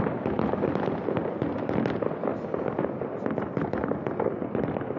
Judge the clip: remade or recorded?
recorded